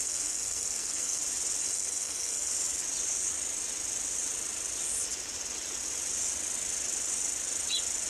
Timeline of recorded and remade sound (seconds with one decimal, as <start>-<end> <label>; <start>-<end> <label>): 0.0-1.2 remade; 1.2-1.6 recorded; 1.6-2.5 remade; 2.5-8.1 recorded